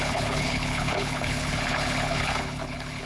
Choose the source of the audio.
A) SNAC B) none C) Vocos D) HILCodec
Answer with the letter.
D